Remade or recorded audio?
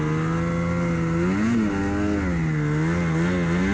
recorded